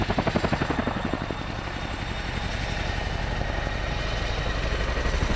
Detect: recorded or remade recorded